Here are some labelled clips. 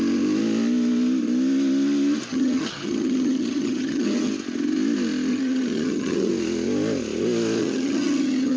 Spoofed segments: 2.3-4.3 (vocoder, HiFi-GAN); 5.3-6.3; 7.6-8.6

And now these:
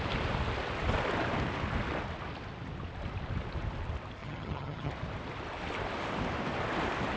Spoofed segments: 4.2-4.9 (vocoder, HiFi-GAN)

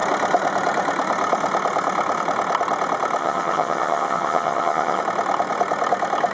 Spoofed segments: 3.2-5.0 (vocoder, HiFi-GAN)

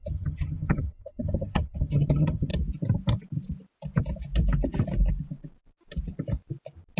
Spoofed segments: 0.0-2.5 (vocoder, HiFi-GAN)

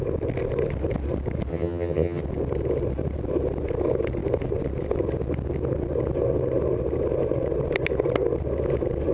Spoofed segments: 1.5-2.2 (vocoder, HiFi-GAN)

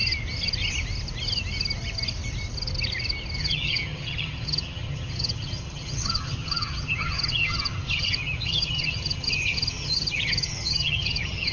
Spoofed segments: 3.4-11.5 (vocoder, HiFi-GAN)

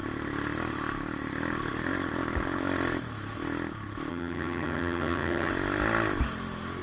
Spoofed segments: 4.1-5.5 (vocoder, HiFi-GAN)

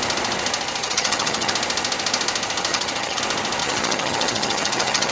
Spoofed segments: 0.8-1.5 (vocoder, HiFi-GAN); 2.7-3.2; 3.6-5.1